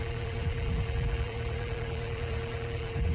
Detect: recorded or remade remade